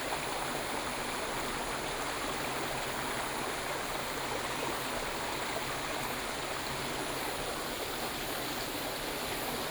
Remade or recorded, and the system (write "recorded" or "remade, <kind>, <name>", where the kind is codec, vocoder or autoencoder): recorded